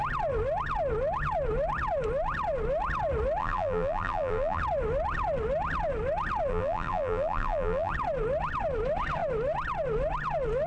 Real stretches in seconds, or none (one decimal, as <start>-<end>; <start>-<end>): 0.0-3.4; 4.6-6.5; 7.9-10.7